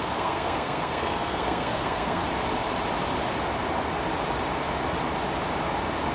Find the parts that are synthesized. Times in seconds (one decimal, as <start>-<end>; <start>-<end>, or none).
0.0-2.2